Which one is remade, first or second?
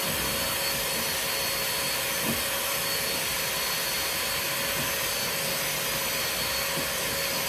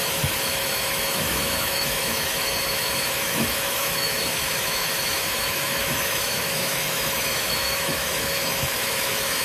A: second